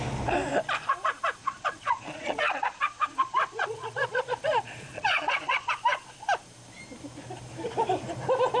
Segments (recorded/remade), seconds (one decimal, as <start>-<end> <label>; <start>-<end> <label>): 0.0-1.4 recorded; 1.4-5.7 remade; 5.7-8.6 recorded